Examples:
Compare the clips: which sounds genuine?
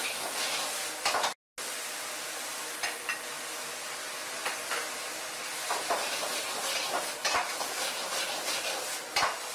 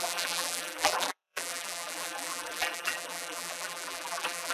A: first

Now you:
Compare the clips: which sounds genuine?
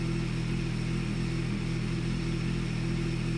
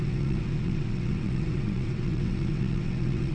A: first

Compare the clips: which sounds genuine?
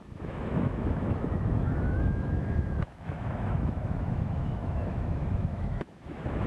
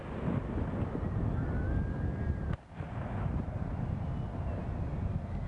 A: second